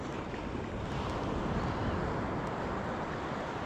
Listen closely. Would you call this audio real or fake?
real